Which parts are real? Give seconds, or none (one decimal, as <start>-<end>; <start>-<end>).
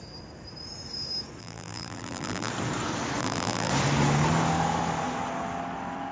0.0-1.4; 2.5-3.2; 3.7-6.1